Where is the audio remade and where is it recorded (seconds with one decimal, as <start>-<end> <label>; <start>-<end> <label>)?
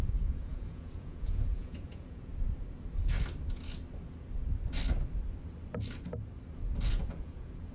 0.0-2.3 remade; 2.3-6.9 recorded; 6.9-7.7 remade